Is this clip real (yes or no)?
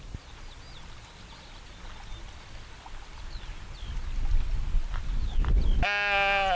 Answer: yes